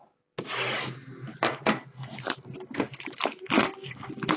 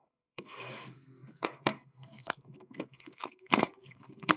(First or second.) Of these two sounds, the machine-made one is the second